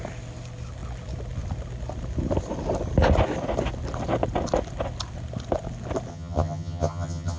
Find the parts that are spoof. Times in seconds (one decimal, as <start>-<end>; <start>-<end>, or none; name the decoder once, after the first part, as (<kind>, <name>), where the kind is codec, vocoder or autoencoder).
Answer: 6.1-7.4 (vocoder, HiFi-GAN)